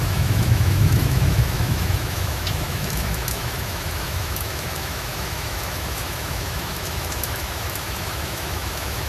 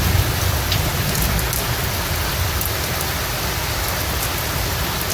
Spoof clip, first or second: first